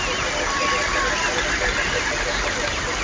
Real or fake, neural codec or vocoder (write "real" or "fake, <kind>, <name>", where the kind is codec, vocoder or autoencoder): real